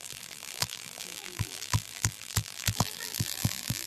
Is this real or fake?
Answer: fake